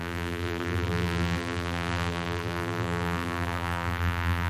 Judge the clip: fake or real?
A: fake